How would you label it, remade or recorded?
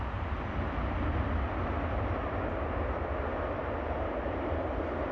recorded